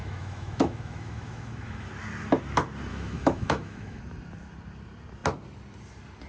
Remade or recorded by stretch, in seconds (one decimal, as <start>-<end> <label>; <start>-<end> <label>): 0.0-1.9 remade; 1.9-2.9 recorded; 2.9-4.0 remade; 4.0-6.3 recorded